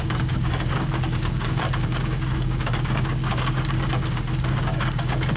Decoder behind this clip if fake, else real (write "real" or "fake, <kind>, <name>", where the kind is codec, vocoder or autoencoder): fake, codec, DAC